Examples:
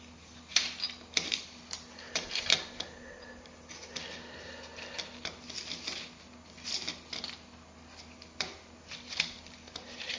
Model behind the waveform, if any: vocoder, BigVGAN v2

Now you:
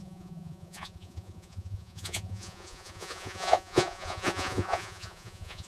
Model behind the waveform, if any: vocoder, Vocos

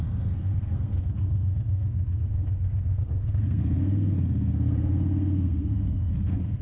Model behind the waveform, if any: codec, SNAC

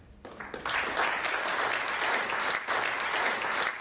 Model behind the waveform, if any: none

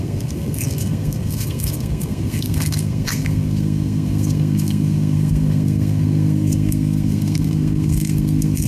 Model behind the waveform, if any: codec, SNAC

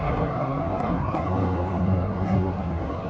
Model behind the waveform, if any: codec, SNAC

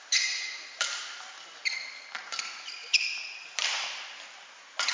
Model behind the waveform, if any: none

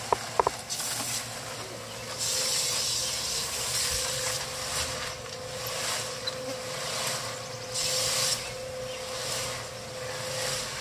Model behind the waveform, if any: none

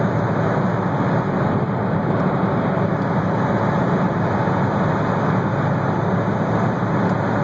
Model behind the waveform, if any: none